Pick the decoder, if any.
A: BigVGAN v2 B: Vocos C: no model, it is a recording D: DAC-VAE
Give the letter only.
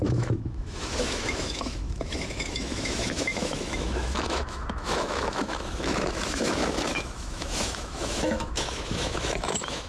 D